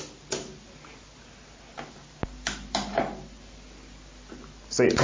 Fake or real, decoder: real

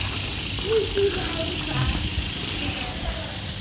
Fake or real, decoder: real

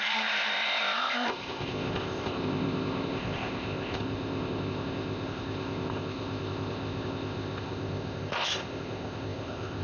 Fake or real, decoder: fake, codec, ZipCodec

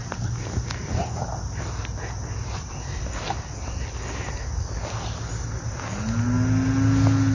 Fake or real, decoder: real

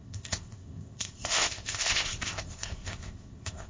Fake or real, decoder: fake, codec, ZipCodec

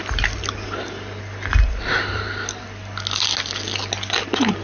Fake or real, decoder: real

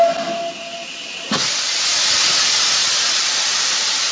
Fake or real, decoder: real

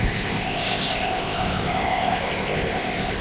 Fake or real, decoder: fake, codec, ZipCodec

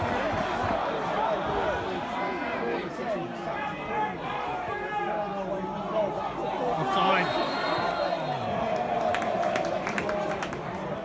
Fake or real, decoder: real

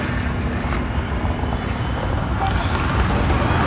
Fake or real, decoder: real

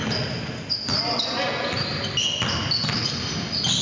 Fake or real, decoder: real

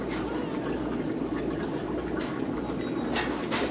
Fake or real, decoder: real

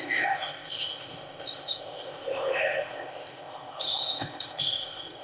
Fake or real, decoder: fake, codec, ZipCodec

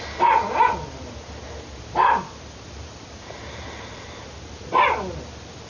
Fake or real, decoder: real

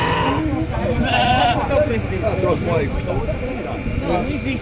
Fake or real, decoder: real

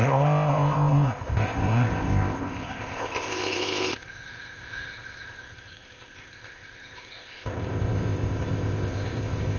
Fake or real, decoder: fake, codec, ZipCodec